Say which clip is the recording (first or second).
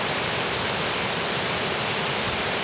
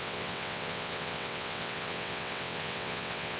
first